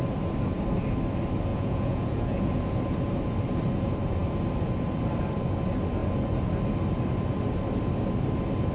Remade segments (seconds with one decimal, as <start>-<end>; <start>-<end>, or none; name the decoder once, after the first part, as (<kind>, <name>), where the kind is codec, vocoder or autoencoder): 1.5-2.6 (vocoder, Vocos)